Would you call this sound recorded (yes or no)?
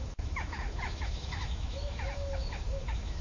no